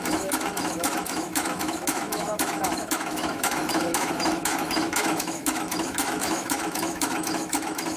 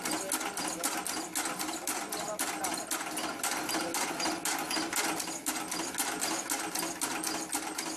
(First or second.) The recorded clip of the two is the second